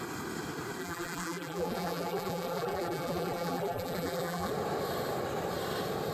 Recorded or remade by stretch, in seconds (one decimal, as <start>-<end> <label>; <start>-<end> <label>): 0.0-0.8 recorded; 0.8-4.5 remade; 4.5-6.1 recorded